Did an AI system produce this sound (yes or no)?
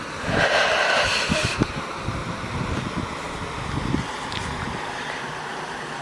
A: no